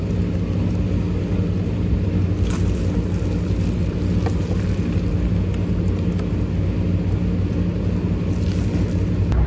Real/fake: real